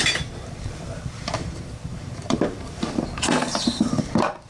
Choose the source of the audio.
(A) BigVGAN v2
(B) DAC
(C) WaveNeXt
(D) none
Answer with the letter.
A